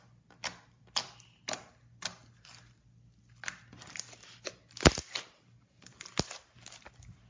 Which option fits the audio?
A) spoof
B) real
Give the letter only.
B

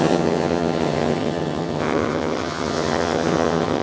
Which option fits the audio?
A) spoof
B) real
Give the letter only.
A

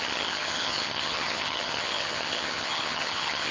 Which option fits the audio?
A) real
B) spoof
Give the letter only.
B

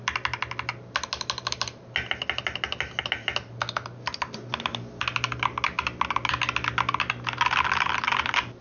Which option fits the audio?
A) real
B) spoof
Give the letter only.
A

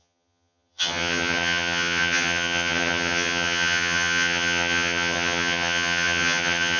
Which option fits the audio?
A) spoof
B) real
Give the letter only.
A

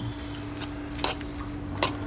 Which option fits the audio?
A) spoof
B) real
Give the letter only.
B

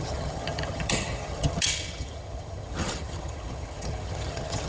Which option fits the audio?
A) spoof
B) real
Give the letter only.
A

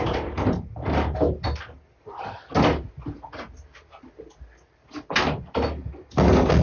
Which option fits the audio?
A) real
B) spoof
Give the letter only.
A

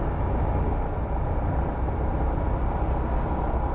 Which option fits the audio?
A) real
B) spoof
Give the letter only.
A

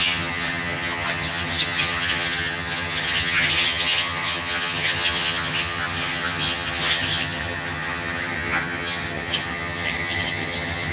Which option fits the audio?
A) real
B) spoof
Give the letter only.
B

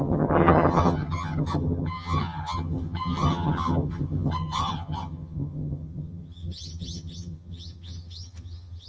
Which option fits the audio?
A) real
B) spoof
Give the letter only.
B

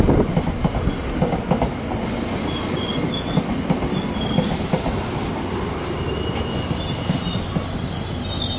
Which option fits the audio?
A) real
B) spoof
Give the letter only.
A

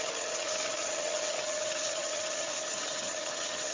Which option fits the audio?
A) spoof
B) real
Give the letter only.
A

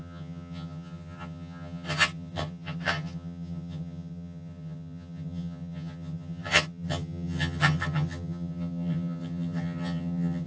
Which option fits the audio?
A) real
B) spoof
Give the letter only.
B